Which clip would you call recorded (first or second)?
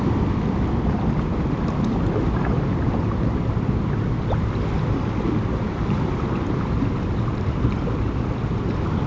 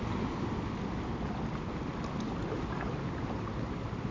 second